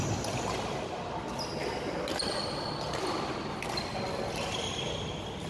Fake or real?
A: real